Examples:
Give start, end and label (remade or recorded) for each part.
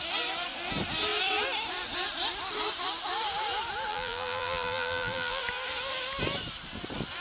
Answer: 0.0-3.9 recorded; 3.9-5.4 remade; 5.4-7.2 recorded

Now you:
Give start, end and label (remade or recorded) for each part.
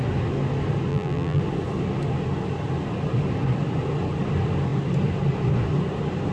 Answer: 0.0-0.9 recorded; 0.9-1.4 remade; 1.4-6.3 recorded